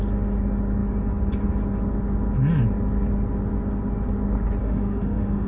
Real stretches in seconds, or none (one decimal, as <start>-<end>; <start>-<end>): 0.0-4.6